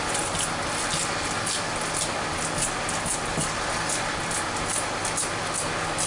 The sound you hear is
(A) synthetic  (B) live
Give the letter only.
B